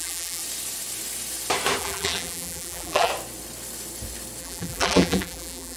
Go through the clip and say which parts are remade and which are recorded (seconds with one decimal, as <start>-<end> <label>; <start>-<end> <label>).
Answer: 0.0-0.4 remade; 0.4-1.8 recorded; 1.8-3.1 remade; 3.1-4.4 recorded; 4.4-5.8 remade